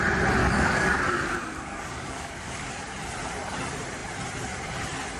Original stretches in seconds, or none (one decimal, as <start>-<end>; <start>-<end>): 0.0-0.4; 2.7-5.2